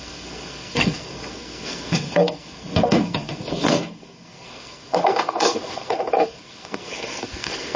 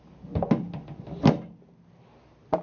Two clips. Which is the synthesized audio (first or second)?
first